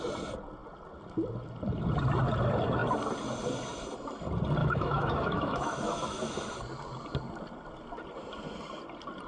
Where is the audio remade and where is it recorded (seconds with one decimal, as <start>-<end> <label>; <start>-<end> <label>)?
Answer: 0.0-4.6 recorded; 4.6-6.3 remade; 6.3-9.3 recorded